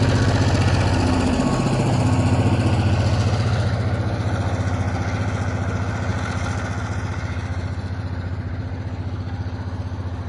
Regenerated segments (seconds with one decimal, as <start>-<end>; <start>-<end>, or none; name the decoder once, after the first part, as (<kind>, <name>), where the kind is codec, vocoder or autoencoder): none

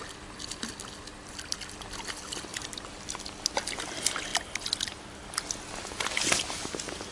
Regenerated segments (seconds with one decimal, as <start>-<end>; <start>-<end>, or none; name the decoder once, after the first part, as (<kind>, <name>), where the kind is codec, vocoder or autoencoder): 2.5-3.8 (vocoder, BigVGAN v2); 4.3-5.4

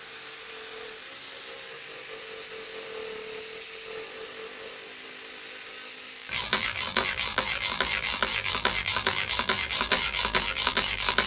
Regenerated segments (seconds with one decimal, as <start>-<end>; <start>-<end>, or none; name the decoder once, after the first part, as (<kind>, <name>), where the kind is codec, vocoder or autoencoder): 6.2-11.3 (vocoder, BigVGAN v2)

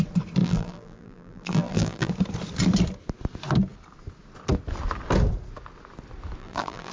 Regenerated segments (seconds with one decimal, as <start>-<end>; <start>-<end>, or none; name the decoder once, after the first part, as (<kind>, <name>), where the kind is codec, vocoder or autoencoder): 0.4-2.1 (vocoder, BigVGAN v2); 6.4-6.9